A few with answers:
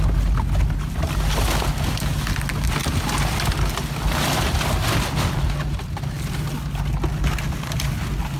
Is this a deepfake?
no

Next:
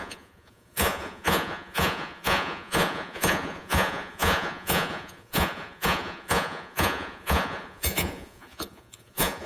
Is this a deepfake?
yes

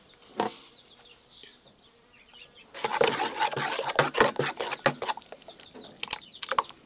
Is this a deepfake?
no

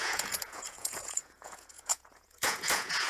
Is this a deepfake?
yes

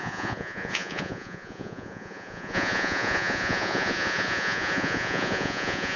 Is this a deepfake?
yes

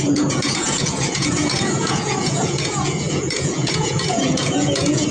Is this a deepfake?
yes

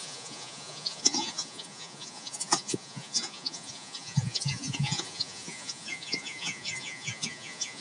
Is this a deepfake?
yes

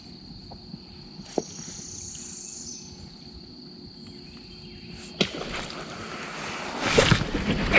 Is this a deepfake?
no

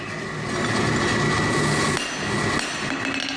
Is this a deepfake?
no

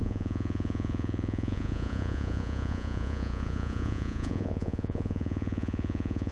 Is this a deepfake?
yes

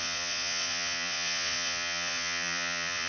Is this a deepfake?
yes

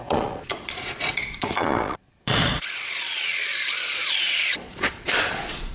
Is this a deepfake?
yes